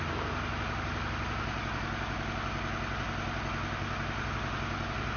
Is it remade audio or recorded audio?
recorded